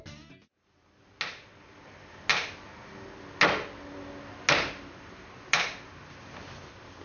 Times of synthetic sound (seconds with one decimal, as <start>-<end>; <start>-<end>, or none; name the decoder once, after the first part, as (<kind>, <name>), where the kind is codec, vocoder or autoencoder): none